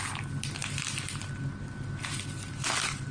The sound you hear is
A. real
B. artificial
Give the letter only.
A